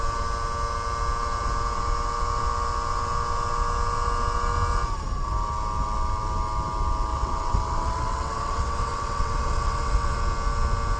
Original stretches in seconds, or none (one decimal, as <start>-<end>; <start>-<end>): 0.0-7.1; 10.2-11.0